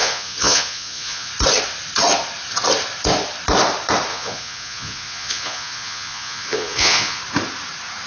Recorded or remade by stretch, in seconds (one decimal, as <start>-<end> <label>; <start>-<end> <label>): 0.0-1.3 remade; 1.3-4.1 recorded; 4.1-7.2 remade; 7.2-8.1 recorded